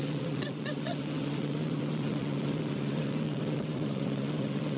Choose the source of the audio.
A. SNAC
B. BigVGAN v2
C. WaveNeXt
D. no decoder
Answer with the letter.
C